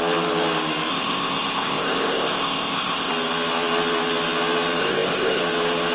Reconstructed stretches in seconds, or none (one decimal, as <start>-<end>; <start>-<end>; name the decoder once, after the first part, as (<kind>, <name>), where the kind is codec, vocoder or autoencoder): 0.9-3.1 (codec, ZipCodec); 4.8-5.4